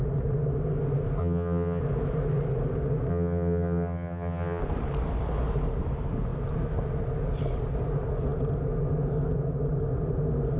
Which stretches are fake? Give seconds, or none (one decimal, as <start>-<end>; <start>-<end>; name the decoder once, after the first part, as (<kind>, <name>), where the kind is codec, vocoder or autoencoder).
1.2-1.8 (vocoder, HiFi-GAN); 3.1-4.6

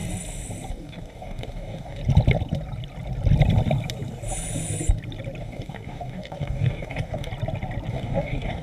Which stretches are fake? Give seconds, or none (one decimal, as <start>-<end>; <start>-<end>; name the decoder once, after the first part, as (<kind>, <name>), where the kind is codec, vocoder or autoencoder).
0.7-2.0 (codec, DAC); 5.4-7.3; 7.9-8.6

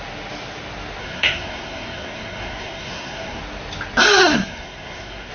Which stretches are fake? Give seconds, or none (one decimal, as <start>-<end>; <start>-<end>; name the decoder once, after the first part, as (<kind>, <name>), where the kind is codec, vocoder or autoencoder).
1.0-3.4 (codec, SNAC); 4.2-5.3

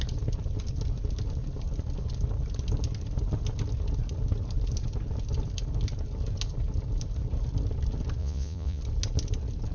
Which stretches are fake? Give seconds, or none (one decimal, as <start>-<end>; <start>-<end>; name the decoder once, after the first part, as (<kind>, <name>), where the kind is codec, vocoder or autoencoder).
8.2-8.8 (vocoder, Vocos)

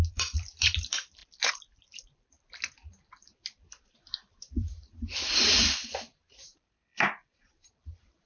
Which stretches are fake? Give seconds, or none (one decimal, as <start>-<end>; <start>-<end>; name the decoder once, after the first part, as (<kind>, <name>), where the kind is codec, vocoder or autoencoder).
0.0-1.2 (vocoder, BigVGAN v2); 1.8-8.3